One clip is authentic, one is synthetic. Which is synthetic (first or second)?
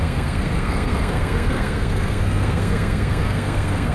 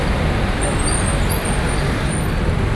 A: first